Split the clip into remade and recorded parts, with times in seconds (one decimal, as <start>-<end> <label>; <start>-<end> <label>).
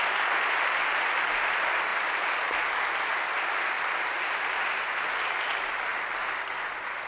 0.0-7.1 recorded